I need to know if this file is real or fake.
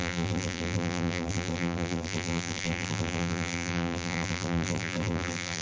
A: fake